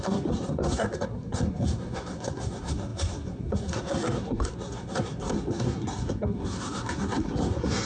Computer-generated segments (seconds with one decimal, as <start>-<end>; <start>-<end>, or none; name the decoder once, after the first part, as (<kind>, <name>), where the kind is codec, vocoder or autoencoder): 0.0-7.9 (codec, SNAC)